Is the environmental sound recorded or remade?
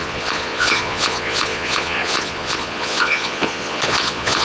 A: remade